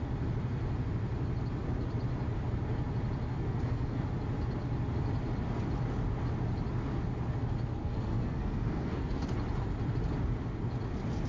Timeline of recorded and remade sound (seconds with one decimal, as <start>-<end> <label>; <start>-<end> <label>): 0.0-3.3 recorded; 3.3-4.0 remade; 4.0-7.8 recorded; 7.8-9.3 remade; 9.3-11.3 recorded